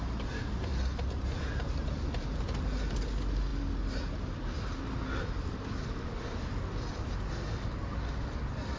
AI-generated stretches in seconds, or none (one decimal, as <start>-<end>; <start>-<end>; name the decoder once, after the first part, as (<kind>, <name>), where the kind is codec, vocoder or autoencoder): none